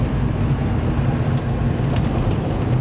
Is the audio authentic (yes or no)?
yes